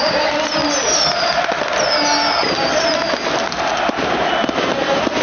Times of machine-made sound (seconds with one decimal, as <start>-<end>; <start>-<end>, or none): none